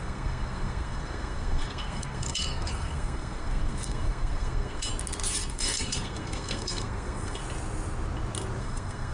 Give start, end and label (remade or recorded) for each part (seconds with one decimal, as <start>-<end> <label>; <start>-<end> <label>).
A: 0.0-4.9 remade; 4.9-5.5 recorded; 5.5-7.4 remade; 7.4-8.6 recorded; 8.6-9.1 remade